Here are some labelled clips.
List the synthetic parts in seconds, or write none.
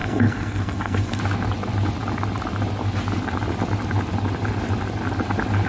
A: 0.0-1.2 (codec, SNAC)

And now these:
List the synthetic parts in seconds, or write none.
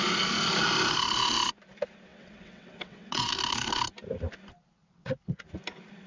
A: 2.1-3.3 (vocoder, WaveNeXt); 4.8-5.4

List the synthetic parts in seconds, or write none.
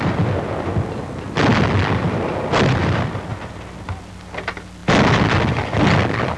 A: none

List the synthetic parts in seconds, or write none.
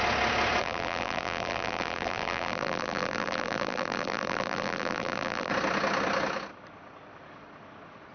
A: 0.6-5.5 (vocoder, BigVGAN v2)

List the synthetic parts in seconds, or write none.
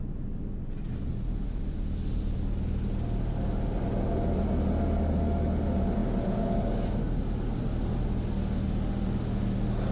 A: none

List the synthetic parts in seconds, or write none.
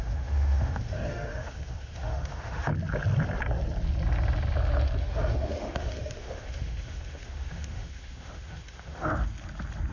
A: 0.0-2.7 (autoencoder, DAC-VAE); 5.0-9.1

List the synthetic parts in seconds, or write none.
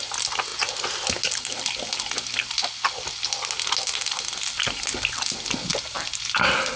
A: none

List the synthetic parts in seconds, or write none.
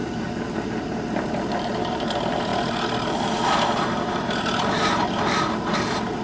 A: 0.6-6.2 (vocoder, BigVGAN v2)